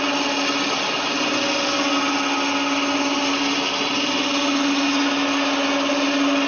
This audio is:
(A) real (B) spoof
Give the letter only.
A